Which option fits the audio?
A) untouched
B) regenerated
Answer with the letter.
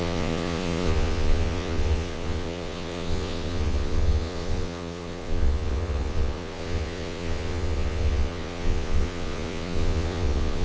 B